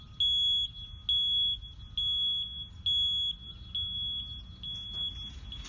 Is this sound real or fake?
real